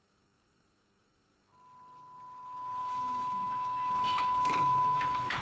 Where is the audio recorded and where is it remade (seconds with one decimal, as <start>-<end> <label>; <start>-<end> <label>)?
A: 0.0-2.8 recorded; 2.8-5.4 remade